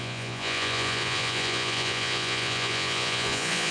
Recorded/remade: remade